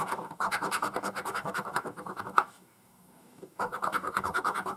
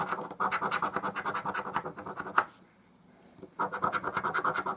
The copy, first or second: first